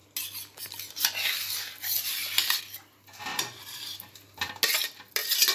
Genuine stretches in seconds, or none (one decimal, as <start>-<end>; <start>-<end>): 0.0-3.3; 4.5-5.5